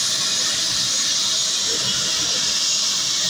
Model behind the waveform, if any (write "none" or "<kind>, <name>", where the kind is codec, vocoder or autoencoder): none